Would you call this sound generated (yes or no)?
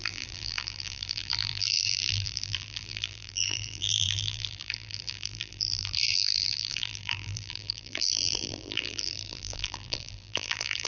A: yes